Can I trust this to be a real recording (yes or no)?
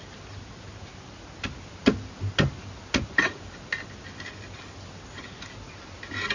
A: yes